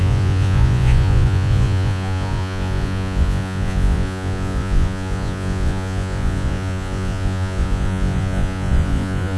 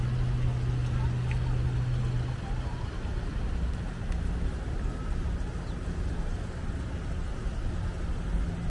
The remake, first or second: first